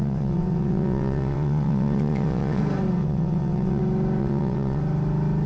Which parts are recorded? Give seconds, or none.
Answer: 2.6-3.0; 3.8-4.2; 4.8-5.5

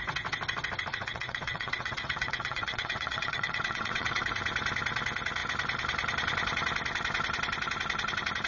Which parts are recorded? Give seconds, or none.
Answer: 0.0-0.9; 4.3-8.5

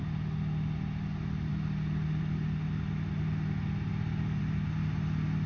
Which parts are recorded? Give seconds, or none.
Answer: 0.0-5.5

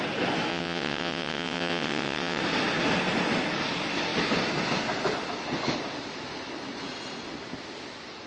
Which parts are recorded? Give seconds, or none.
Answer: 0.0-0.5; 2.4-8.3

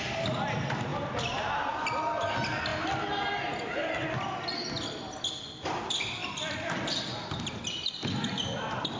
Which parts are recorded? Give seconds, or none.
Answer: 0.0-9.0

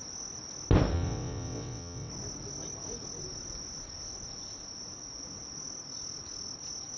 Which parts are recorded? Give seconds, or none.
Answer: 0.0-0.9; 2.1-7.0

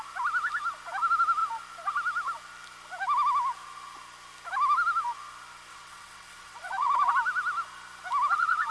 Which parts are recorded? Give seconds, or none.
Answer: 0.0-5.7; 7.1-8.7

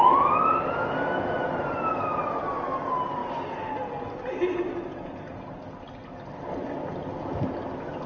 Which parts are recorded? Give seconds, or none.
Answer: 0.0-8.1